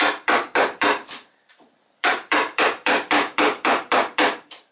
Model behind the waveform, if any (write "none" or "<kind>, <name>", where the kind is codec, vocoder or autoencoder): vocoder, BigVGAN v2